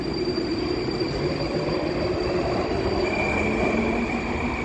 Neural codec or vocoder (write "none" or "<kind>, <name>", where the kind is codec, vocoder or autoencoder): none